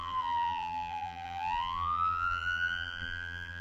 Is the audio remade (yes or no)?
yes